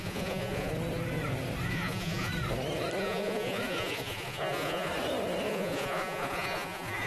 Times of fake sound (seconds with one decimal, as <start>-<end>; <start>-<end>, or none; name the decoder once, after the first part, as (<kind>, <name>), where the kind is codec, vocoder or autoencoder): 0.0-0.7 (vocoder, Vocos); 1.7-2.3; 3.0-4.9; 5.5-7.1